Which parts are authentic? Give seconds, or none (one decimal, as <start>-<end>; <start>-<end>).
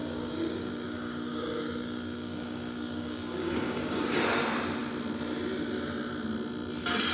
4.2-7.1